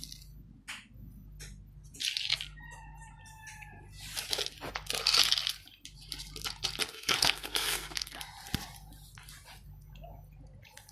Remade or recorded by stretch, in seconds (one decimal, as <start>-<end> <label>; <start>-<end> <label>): 0.0-6.9 recorded; 6.9-8.2 remade; 8.2-10.9 recorded